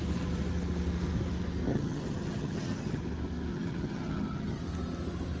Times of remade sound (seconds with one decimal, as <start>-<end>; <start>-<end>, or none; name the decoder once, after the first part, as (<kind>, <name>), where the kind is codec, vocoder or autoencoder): 1.7-3.0 (vocoder, HiFi-GAN); 3.5-4.6